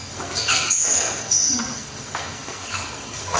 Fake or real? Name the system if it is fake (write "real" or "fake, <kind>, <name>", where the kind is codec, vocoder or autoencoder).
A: fake, codec, SNAC